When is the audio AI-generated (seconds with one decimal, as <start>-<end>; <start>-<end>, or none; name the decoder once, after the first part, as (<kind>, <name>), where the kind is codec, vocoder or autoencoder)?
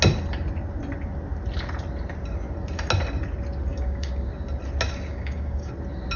3.7-4.3 (codec, DAC); 5.1-5.7